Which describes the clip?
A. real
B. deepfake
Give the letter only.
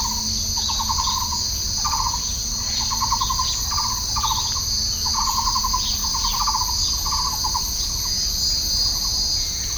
A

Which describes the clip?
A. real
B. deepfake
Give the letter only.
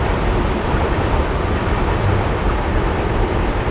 B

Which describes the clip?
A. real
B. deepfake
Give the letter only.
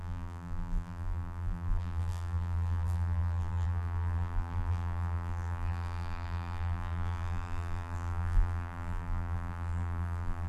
B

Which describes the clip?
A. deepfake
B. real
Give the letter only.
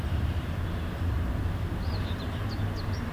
A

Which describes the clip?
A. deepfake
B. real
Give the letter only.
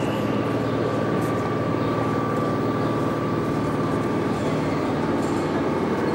B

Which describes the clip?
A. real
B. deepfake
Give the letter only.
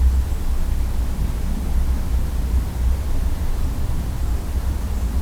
A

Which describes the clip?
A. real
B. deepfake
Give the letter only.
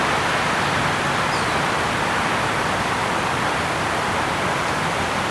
B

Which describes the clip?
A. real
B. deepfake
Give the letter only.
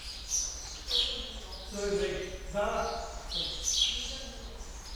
A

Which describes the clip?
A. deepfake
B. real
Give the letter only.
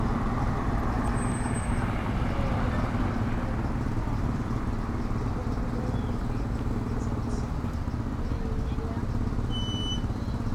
B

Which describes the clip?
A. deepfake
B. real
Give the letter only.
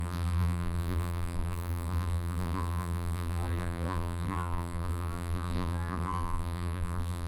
A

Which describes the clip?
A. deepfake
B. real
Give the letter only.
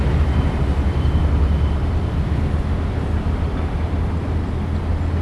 B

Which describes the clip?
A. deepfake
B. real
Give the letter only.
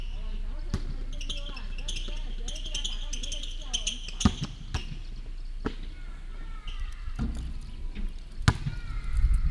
B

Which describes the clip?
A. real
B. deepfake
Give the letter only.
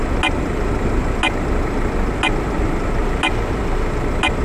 A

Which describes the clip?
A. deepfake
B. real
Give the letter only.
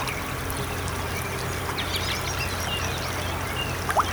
B